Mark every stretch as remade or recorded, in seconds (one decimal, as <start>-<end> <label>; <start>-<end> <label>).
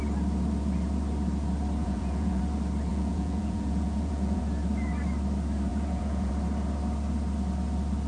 0.0-1.8 recorded; 1.8-2.4 remade; 2.4-2.9 recorded; 2.9-4.4 remade; 4.4-5.7 recorded; 5.7-6.3 remade; 6.3-8.1 recorded